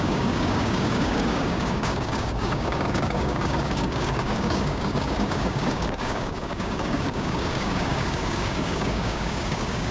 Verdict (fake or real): fake